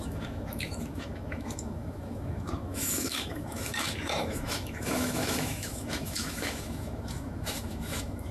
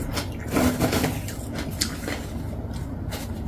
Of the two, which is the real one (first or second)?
second